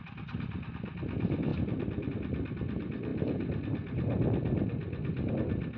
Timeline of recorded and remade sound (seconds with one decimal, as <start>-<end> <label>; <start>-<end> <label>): 0.0-1.5 recorded; 1.5-2.1 remade; 2.1-5.8 recorded